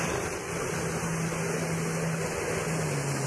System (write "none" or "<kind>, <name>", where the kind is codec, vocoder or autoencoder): none